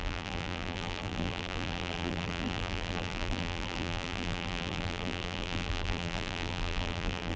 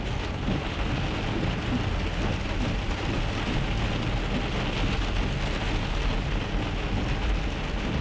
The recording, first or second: second